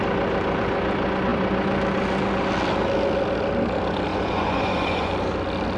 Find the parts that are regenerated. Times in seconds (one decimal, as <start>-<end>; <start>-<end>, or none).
4.1-5.1